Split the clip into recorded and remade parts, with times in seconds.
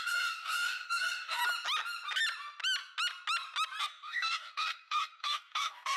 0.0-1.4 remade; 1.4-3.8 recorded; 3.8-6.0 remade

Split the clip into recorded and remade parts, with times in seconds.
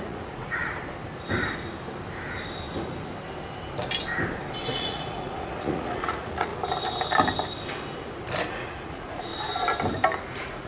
0.0-0.6 remade; 0.6-4.7 recorded; 4.7-6.5 remade; 6.5-8.5 recorded; 8.5-9.3 remade; 9.3-10.2 recorded; 10.2-10.7 remade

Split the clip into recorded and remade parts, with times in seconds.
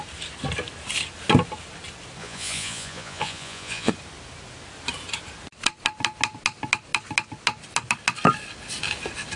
0.0-2.2 recorded; 2.2-3.9 remade; 3.9-9.4 recorded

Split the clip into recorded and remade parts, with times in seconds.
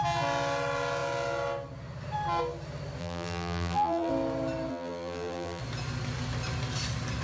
0.0-3.0 recorded; 3.0-4.1 remade; 4.1-4.7 recorded; 4.7-5.6 remade; 5.6-7.2 recorded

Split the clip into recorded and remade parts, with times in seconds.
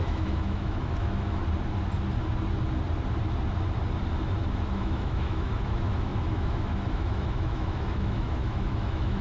0.0-1.4 remade; 1.4-4.5 recorded; 4.5-9.2 remade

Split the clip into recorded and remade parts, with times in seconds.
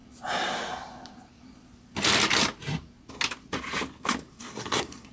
0.0-4.3 recorded; 4.3-5.1 remade